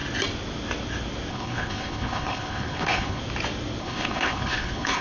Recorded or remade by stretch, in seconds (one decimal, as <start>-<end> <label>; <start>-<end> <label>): 0.0-1.3 recorded; 1.3-3.2 remade; 3.2-3.8 recorded; 3.8-5.0 remade